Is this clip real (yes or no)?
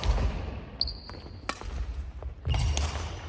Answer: yes